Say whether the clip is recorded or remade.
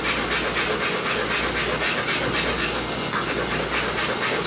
recorded